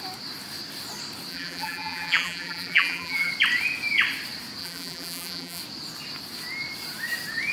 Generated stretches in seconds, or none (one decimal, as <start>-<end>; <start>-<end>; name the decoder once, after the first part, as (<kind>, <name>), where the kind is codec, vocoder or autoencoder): 1.3-3.3 (vocoder, BigVGAN v2); 4.6-5.6